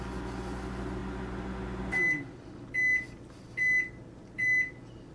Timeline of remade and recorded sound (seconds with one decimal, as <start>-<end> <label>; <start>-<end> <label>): 0.0-5.1 recorded